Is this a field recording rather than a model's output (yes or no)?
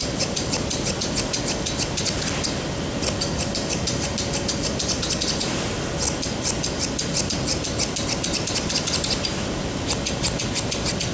yes